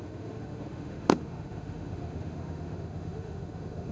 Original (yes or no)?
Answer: no